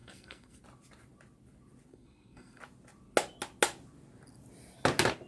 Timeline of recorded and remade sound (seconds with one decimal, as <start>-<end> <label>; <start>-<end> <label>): 0.0-0.6 remade; 0.6-1.9 recorded; 1.9-2.6 remade; 2.6-5.3 recorded